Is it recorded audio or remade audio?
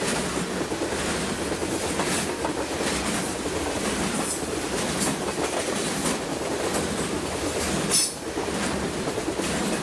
recorded